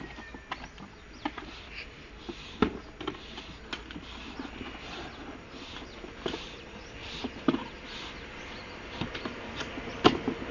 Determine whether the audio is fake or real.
real